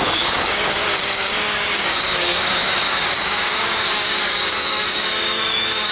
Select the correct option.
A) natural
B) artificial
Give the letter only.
B